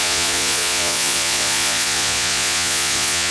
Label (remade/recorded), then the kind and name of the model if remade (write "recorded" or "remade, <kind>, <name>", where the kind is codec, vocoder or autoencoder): remade, vocoder, Vocos